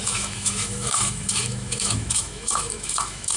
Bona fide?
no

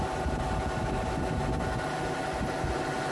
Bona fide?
yes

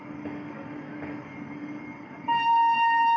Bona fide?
no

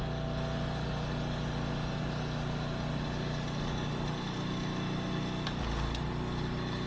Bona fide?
yes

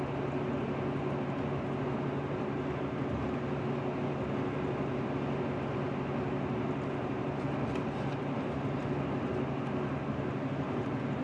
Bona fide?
yes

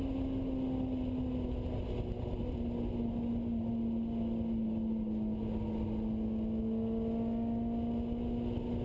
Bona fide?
yes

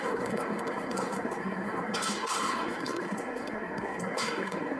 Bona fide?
no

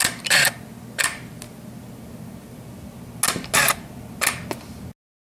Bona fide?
yes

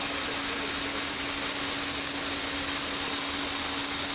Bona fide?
yes